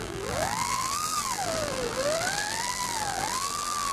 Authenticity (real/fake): fake